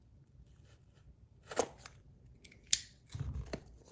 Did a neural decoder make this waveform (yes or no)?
no